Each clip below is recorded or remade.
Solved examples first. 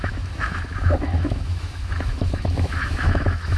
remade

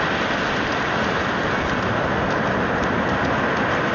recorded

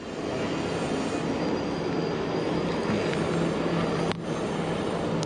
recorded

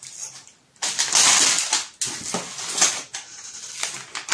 recorded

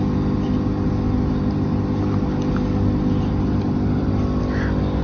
recorded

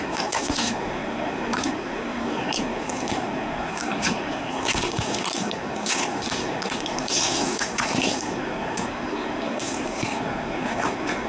remade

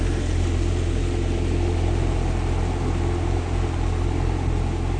recorded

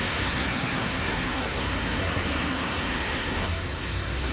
remade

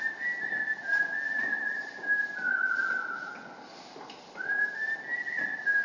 recorded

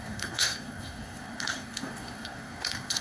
remade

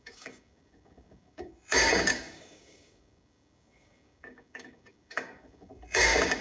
remade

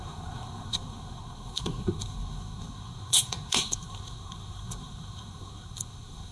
remade